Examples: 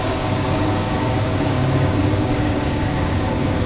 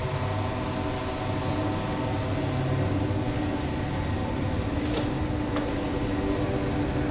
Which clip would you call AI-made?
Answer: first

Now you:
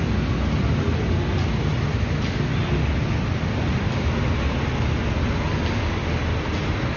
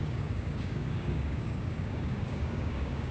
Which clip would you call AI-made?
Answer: second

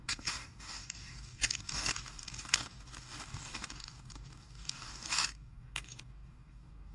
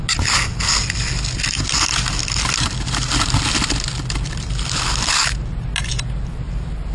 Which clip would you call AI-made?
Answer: first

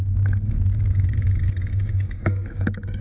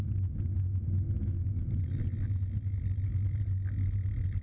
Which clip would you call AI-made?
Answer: first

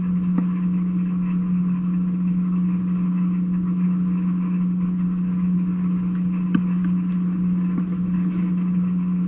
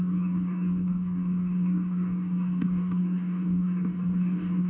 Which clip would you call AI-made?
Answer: second